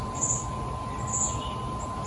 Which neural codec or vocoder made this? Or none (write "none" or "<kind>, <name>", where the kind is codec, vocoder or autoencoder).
none